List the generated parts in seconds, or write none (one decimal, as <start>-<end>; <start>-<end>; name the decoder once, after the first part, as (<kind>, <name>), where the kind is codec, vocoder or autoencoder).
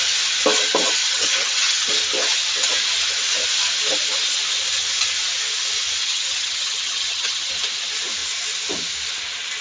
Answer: 1.0-1.9 (vocoder, HiFi-GAN); 6.0-7.5